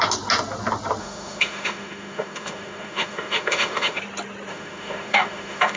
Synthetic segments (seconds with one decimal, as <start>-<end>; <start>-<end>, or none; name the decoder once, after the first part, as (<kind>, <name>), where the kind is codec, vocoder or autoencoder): 1.0-4.0 (autoencoder, DAC-VAE); 4.5-5.8